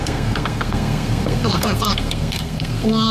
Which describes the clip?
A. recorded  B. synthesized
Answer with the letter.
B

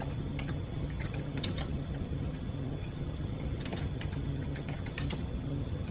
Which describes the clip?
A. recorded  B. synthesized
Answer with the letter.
B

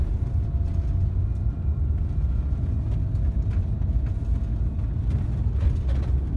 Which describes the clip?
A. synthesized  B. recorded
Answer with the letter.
B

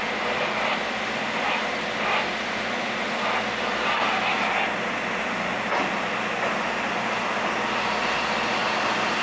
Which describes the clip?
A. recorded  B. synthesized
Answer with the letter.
A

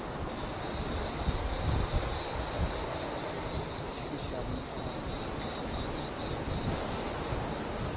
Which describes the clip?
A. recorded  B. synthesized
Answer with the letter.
A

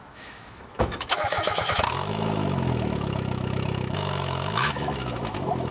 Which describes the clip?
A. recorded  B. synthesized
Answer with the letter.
B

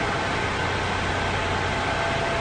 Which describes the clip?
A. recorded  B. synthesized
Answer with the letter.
A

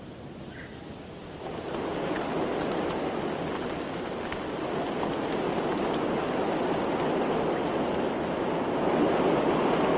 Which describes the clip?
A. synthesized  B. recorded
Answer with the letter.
B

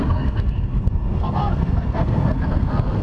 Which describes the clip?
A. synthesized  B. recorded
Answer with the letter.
A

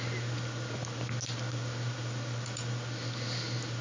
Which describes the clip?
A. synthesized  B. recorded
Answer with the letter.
B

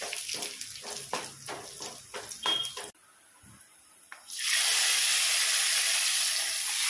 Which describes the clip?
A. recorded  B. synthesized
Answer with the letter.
A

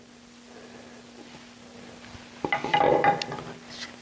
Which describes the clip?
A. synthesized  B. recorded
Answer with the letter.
B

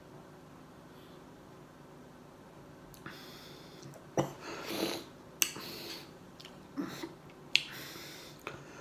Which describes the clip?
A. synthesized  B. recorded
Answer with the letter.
B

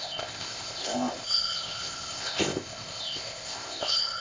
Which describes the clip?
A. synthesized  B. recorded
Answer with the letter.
A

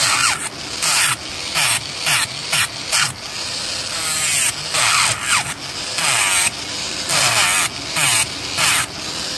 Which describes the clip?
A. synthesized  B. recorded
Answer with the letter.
B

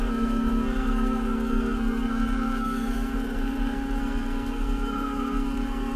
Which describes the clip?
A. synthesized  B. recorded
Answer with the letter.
A